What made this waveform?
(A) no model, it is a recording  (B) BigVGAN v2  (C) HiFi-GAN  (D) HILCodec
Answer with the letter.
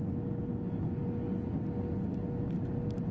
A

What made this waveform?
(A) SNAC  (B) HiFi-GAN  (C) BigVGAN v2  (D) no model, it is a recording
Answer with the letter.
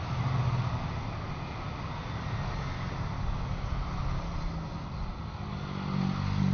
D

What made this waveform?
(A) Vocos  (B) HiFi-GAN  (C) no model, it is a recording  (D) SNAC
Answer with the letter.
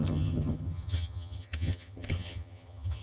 B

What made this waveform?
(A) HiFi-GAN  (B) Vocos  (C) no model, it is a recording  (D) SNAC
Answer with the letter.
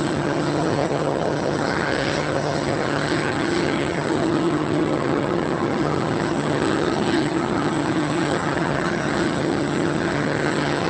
A